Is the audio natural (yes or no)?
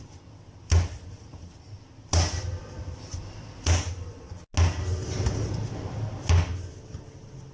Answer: yes